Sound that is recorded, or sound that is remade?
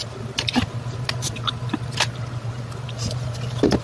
recorded